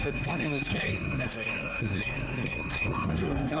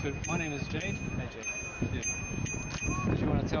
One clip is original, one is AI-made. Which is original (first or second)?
second